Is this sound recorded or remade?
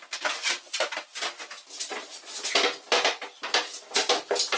recorded